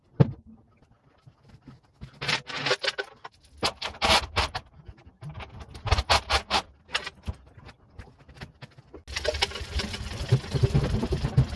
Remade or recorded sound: recorded